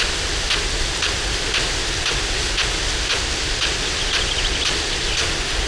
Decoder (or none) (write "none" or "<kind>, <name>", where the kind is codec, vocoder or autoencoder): none